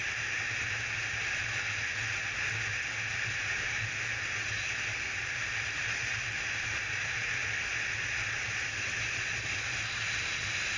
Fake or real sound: real